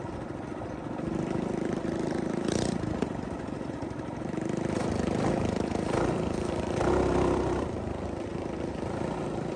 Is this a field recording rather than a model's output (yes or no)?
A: no